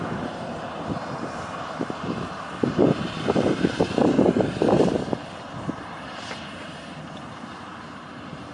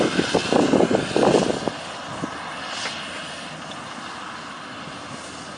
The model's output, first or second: first